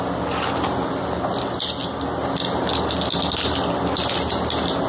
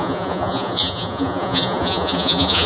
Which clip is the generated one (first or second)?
second